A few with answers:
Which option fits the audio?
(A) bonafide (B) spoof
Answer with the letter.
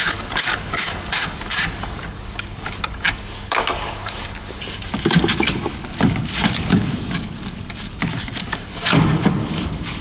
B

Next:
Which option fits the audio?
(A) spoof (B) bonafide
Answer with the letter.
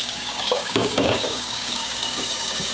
A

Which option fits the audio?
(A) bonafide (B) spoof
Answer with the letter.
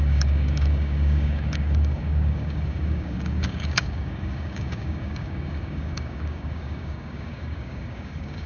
B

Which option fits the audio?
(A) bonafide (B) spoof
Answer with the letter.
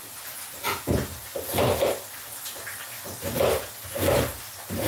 A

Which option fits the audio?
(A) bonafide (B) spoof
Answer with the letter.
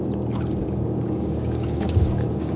B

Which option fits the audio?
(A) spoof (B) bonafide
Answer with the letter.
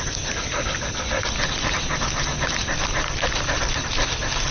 B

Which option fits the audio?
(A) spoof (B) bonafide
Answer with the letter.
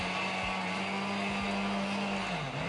B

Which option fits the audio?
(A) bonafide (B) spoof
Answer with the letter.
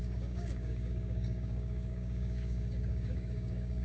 B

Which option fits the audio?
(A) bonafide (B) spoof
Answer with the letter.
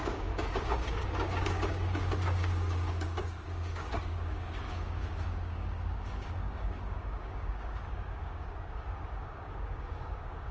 B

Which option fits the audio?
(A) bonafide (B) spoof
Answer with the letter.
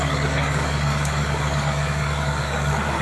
B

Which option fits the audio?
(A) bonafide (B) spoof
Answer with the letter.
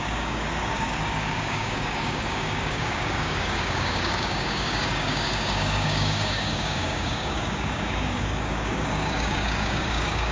B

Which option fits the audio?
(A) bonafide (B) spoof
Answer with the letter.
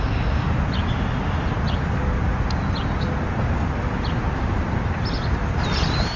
A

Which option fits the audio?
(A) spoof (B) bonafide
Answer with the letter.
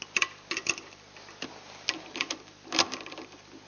B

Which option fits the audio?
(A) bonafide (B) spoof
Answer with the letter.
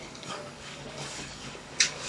B